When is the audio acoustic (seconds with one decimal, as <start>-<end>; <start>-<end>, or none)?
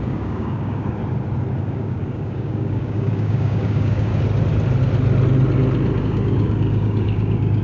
1.0-1.6; 4.1-6.0